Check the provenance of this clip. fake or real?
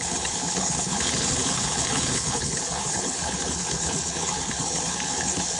fake